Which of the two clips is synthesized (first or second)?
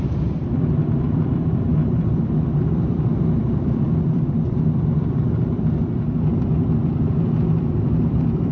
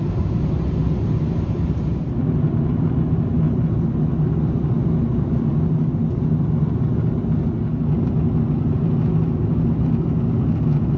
first